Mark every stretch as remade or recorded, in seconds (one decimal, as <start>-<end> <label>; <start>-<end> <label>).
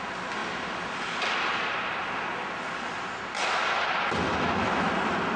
0.0-4.3 recorded; 4.3-4.9 remade; 4.9-5.4 recorded